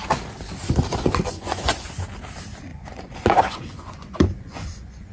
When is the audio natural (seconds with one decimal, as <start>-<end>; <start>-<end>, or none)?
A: 0.0-0.9; 1.9-2.7